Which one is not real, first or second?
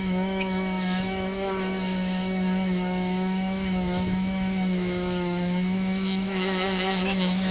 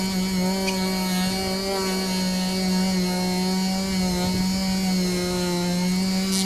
first